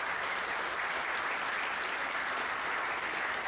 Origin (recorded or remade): recorded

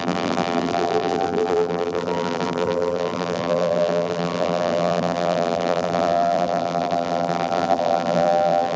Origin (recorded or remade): remade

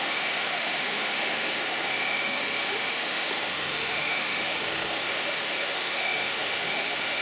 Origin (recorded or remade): remade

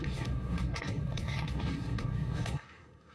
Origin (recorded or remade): remade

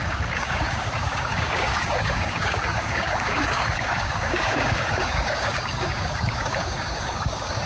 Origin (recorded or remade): remade